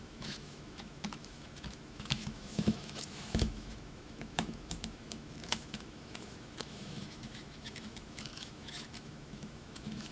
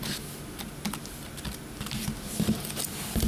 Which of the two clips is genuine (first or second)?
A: second